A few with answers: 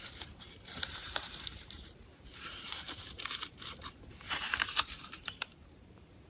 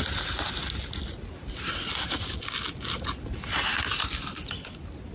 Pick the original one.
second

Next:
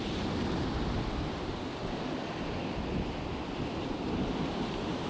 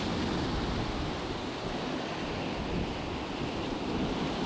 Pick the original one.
second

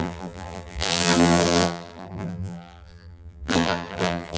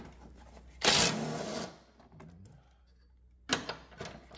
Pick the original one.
second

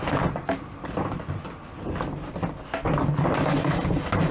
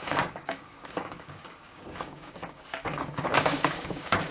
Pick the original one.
first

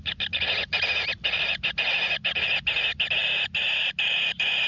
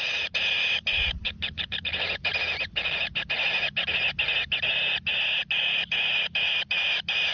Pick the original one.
second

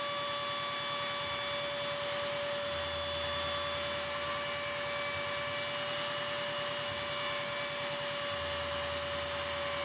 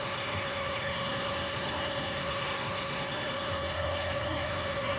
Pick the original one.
first